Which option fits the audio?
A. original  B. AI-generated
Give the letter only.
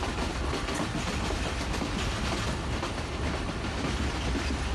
A